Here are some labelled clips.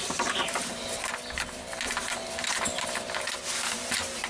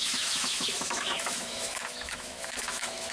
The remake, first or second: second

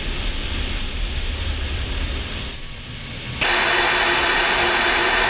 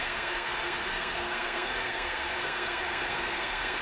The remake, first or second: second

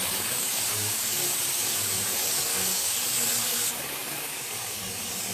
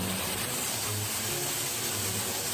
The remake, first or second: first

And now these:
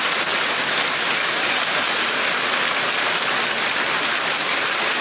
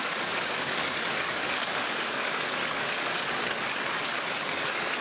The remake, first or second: second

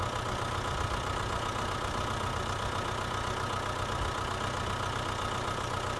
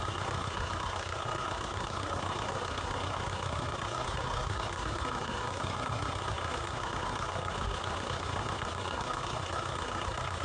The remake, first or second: second